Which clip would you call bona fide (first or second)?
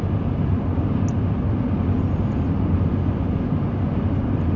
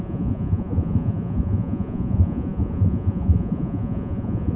first